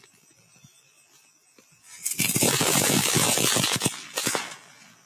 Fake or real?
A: fake